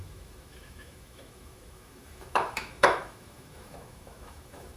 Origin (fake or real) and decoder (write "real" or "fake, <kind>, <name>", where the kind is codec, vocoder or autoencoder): fake, autoencoder, DAC-VAE